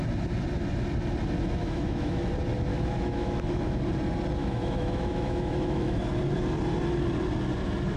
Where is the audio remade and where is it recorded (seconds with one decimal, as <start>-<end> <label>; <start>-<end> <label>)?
0.0-1.6 recorded; 1.6-2.3 remade; 2.3-2.7 recorded; 2.7-3.8 remade; 3.8-4.4 recorded; 4.4-6.0 remade; 6.0-8.0 recorded